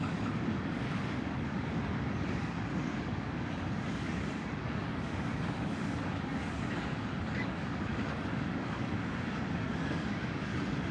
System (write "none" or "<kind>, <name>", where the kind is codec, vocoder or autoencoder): codec, DAC